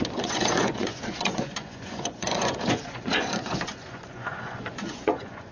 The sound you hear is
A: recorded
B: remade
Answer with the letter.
B